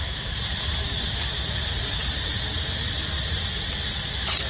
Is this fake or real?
real